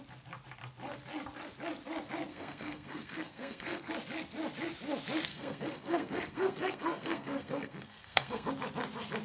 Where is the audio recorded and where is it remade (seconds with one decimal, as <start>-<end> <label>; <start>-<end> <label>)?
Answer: 0.0-2.3 recorded; 2.3-3.9 remade; 3.9-5.3 recorded; 5.3-8.5 remade; 8.5-9.2 recorded